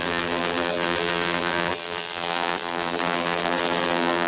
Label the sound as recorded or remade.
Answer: remade